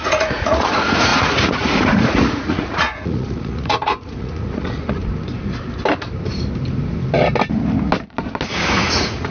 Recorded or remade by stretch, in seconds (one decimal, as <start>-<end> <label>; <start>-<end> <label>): 0.0-5.0 remade; 5.0-8.7 recorded; 8.7-9.3 remade